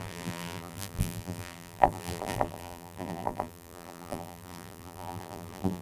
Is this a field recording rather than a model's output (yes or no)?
no